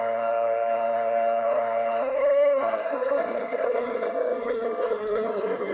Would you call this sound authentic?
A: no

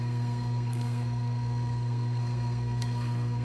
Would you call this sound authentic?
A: no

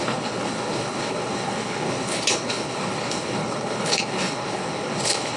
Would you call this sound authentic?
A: no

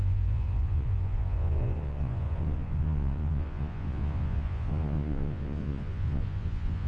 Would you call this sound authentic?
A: no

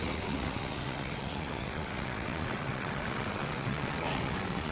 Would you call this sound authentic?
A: no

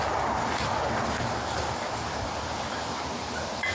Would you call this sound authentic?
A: yes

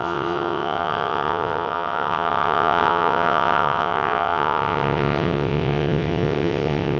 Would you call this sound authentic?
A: no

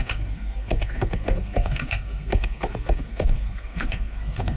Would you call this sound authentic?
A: no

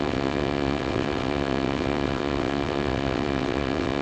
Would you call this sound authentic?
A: no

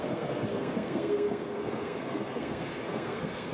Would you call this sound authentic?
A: no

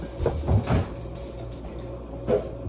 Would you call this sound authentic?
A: yes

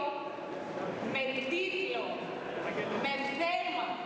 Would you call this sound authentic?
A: yes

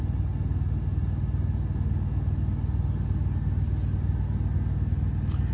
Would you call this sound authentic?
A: yes